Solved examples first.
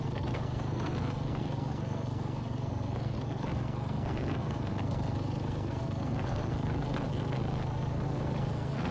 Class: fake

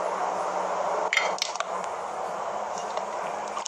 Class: real